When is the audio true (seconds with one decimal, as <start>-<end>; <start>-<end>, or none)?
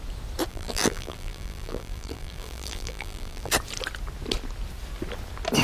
0.0-0.5; 3.5-5.6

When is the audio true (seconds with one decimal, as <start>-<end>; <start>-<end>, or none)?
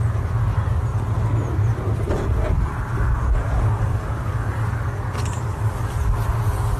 0.0-2.9; 5.8-6.8